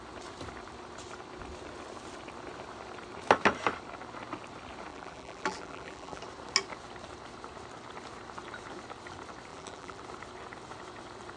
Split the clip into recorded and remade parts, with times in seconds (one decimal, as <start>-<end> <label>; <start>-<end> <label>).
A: 0.0-4.9 recorded; 4.9-6.2 remade; 6.2-9.5 recorded; 9.5-10.0 remade; 10.0-11.4 recorded